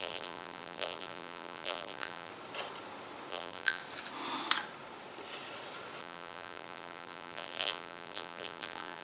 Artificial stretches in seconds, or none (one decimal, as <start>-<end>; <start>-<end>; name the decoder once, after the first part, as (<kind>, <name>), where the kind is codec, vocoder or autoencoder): 0.0-2.3 (vocoder, BigVGAN v2); 3.3-3.8; 6.0-9.0